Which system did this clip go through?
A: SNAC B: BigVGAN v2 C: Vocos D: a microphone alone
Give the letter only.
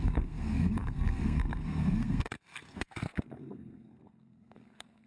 A